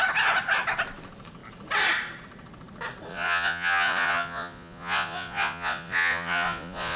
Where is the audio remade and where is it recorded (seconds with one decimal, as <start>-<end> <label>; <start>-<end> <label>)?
0.0-3.1 recorded; 3.1-7.0 remade